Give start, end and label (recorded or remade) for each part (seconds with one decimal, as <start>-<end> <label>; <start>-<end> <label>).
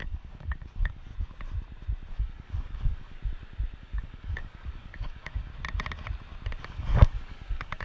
0.0-1.1 remade; 1.1-2.1 recorded; 2.1-3.2 remade; 3.2-3.8 recorded; 3.8-5.5 remade; 5.5-6.6 recorded; 6.6-7.8 remade